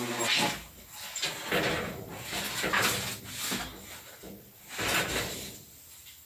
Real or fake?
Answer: real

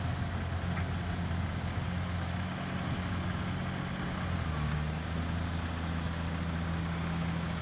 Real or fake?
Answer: real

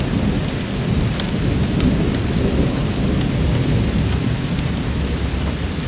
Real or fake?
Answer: real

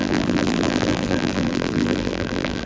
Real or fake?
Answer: fake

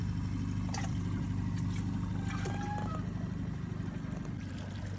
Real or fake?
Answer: real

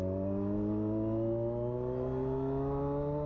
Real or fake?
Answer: real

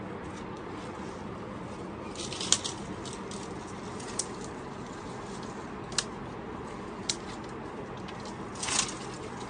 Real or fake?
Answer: real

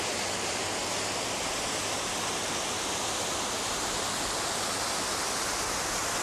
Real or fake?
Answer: real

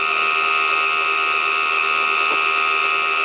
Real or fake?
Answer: real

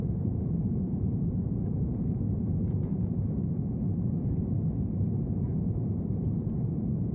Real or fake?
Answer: fake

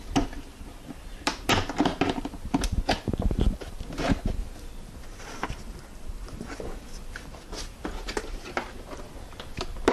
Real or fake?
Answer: fake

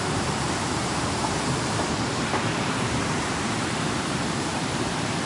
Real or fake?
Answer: fake